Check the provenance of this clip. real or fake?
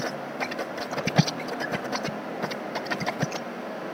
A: real